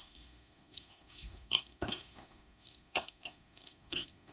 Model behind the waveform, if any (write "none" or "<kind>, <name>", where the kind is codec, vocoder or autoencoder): codec, SNAC